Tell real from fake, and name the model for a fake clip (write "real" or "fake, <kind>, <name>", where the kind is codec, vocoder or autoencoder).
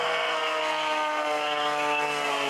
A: fake, codec, SNAC